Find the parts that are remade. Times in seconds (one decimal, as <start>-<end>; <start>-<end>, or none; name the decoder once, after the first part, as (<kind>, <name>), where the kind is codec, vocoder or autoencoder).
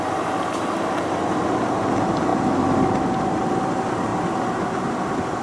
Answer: 4.1-4.7 (vocoder, BigVGAN v2)